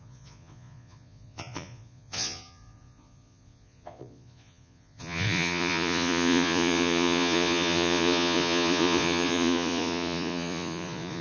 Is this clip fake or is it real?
fake